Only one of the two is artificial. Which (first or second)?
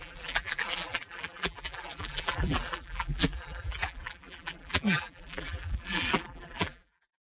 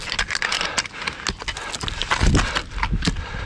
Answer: first